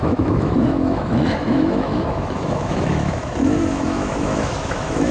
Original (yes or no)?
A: no